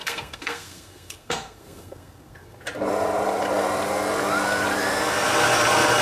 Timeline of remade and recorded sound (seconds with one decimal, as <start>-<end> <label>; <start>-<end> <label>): 0.0-2.6 remade; 2.6-6.0 recorded